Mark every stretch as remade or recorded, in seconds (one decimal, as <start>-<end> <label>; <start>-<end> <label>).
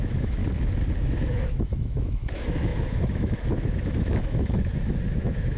0.0-0.4 remade; 0.4-1.0 recorded; 1.0-5.6 remade